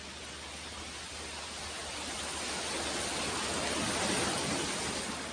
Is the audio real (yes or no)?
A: yes